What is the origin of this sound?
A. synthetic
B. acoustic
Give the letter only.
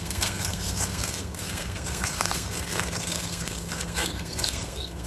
A